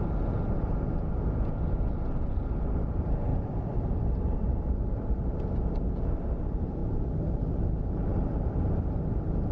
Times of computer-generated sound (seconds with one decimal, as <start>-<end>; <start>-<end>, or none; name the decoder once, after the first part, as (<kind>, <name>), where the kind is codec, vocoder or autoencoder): 3.3-5.2 (vocoder, BigVGAN v2); 6.8-7.5